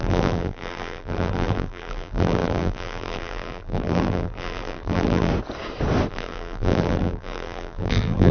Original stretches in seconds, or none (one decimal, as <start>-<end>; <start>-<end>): 5.3-6.1